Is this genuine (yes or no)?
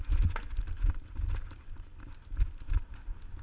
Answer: yes